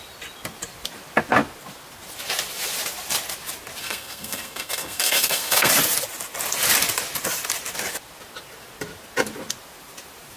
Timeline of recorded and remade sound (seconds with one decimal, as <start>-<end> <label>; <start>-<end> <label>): 0.0-3.8 recorded; 3.8-5.7 remade; 5.7-10.4 recorded